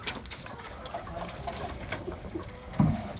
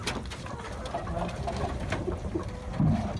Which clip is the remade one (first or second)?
first